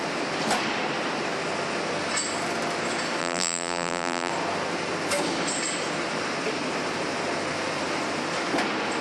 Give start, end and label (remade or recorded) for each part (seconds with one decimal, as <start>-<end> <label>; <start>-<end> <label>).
0.0-3.2 recorded; 3.2-4.3 remade; 4.3-9.0 recorded